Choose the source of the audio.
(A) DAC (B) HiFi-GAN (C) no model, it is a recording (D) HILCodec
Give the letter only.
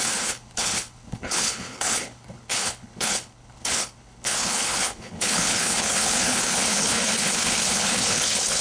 D